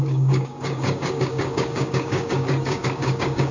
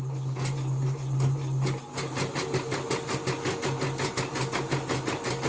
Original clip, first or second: second